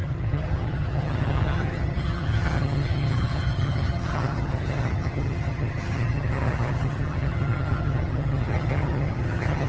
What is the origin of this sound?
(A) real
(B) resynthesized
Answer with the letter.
B